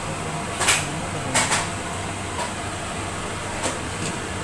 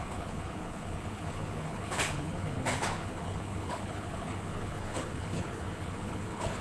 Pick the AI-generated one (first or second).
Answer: second